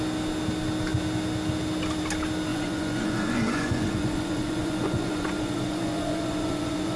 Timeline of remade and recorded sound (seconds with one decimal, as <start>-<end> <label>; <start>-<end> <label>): 0.0-2.5 recorded; 2.5-7.0 remade